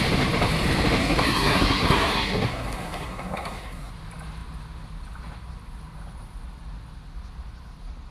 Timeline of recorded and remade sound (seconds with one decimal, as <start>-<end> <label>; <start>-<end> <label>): 0.0-1.0 recorded; 1.0-3.9 remade; 3.9-8.1 recorded